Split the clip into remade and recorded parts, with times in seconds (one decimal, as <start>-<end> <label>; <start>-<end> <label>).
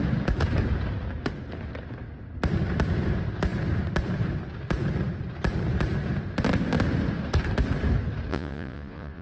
0.0-8.3 recorded; 8.3-9.2 remade